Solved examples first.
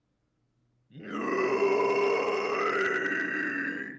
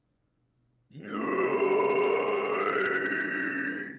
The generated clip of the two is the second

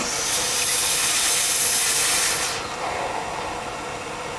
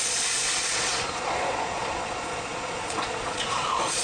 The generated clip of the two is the second